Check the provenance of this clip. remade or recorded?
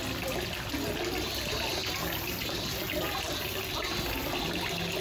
recorded